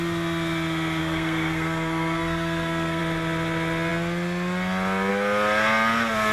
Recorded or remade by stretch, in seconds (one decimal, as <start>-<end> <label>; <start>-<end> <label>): 0.0-1.0 recorded; 1.0-3.0 remade; 3.0-6.3 recorded